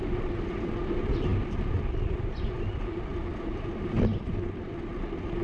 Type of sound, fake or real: real